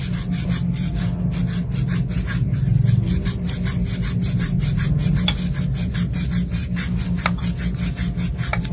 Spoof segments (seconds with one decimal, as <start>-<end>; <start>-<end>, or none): none